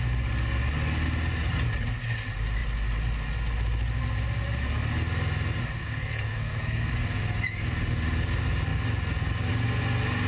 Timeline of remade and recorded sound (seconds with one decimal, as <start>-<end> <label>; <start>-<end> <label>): 0.0-5.8 recorded; 5.8-6.9 remade; 6.9-10.3 recorded